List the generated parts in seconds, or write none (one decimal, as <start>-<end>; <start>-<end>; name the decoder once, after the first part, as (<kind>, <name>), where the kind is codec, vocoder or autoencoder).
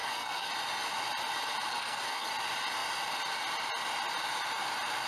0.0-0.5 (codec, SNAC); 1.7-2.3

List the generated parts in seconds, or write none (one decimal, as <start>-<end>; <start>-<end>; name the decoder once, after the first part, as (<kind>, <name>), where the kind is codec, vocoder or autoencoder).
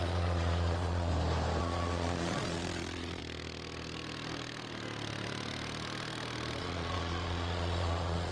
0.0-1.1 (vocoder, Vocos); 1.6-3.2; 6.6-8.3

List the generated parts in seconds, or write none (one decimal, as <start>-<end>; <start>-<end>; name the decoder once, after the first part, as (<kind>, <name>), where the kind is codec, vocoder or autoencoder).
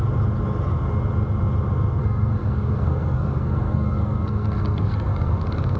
2.0-5.8 (codec, SNAC)